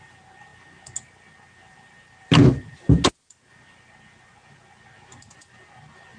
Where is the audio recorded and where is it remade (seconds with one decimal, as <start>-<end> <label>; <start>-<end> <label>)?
0.0-6.2 recorded